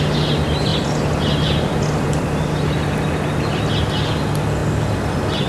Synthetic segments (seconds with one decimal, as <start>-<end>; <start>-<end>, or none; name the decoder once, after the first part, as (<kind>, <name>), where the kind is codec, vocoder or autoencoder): none